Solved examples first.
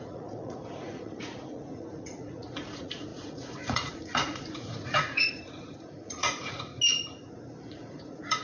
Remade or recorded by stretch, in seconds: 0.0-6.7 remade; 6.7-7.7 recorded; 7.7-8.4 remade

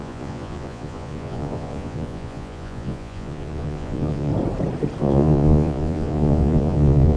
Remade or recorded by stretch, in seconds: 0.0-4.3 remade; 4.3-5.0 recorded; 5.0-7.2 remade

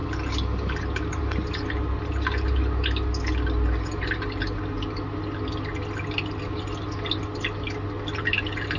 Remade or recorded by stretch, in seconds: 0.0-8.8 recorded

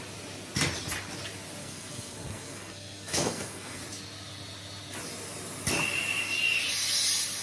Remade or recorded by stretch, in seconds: 0.0-1.6 recorded; 1.6-3.8 remade; 3.8-7.4 recorded

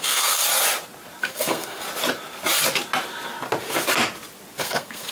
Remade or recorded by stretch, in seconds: 0.0-0.4 remade; 0.4-1.2 recorded; 1.2-1.8 remade; 1.8-4.6 recorded; 4.6-5.1 remade

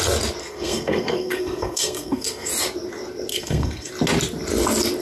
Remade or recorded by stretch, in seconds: 0.0-0.4 recorded; 0.4-2.5 remade; 2.5-3.3 recorded; 3.3-3.9 remade; 3.9-5.0 recorded

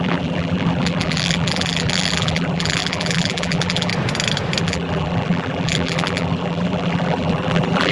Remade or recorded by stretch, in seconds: 0.0-3.9 remade; 3.9-4.6 recorded; 4.6-7.9 remade